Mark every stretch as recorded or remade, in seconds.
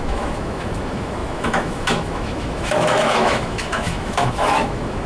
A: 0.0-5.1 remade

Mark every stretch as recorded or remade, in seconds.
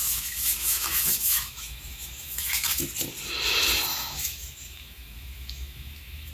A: 0.0-2.8 remade; 2.8-3.9 recorded; 3.9-6.3 remade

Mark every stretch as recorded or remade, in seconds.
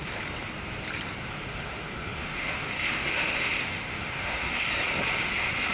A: 0.0-1.3 recorded; 1.3-4.6 remade; 4.6-5.7 recorded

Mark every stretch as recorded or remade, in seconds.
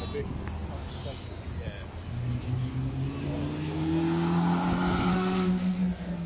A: 0.0-5.1 recorded; 5.1-5.8 remade; 5.8-6.3 recorded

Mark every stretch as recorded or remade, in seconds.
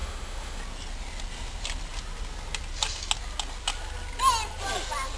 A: 0.0-0.6 remade; 0.6-5.2 recorded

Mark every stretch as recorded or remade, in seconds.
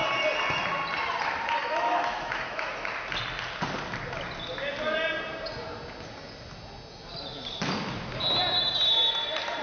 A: 0.0-1.6 recorded; 1.6-2.7 remade; 2.7-9.6 recorded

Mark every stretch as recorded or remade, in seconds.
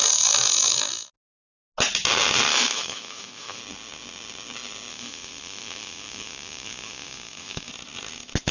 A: 0.0-2.5 recorded; 2.5-3.6 remade; 3.6-4.9 recorded; 4.9-7.7 remade; 7.7-8.5 recorded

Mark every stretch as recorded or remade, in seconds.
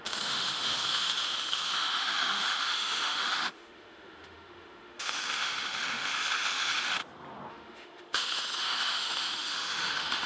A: 0.0-7.0 remade; 7.0-7.5 recorded; 7.5-10.3 remade